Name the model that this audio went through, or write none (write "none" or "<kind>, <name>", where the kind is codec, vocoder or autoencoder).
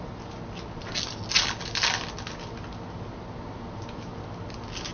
none